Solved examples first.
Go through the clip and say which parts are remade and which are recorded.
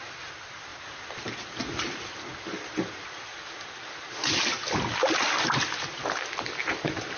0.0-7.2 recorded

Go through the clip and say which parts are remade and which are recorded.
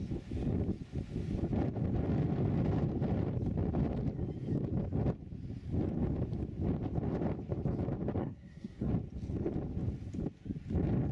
0.0-8.2 recorded; 8.2-8.9 remade; 8.9-11.1 recorded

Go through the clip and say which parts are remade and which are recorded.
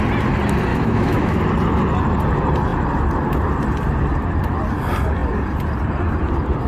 0.0-0.7 recorded; 0.7-1.4 remade; 1.4-6.7 recorded